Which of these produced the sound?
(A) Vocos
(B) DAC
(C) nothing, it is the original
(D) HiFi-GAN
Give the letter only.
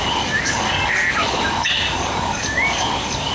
B